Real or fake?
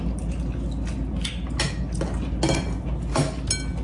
real